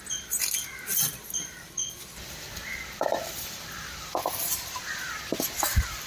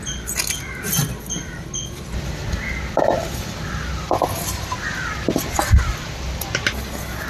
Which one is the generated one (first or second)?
first